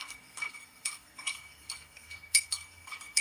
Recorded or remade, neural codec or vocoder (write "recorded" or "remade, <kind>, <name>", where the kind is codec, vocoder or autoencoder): remade, codec, SNAC